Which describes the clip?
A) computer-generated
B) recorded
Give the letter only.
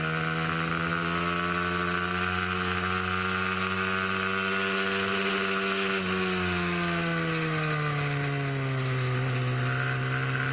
B